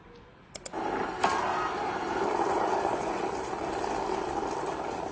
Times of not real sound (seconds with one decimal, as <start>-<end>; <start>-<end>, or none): 2.5-3.2